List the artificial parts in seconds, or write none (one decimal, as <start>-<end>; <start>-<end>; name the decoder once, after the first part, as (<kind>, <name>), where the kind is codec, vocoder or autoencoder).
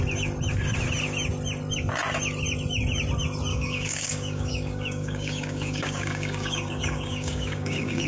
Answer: 3.5-8.1 (codec, DAC)